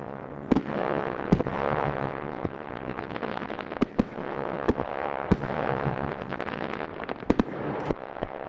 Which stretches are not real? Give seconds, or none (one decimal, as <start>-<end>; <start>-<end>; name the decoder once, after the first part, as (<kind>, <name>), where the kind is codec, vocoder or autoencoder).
0.0-6.9 (vocoder, WaveNeXt); 7.9-8.5